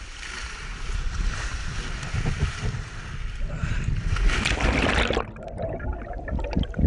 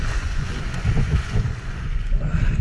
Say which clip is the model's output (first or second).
second